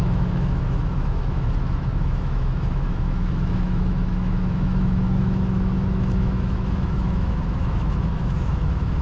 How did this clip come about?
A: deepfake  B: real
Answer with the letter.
A